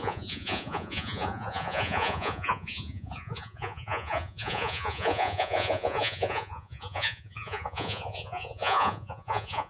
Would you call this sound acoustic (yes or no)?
no